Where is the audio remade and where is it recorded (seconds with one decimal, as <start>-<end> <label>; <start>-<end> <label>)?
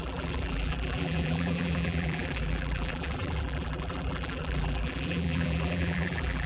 0.0-6.5 remade